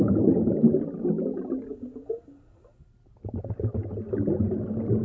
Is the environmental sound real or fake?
real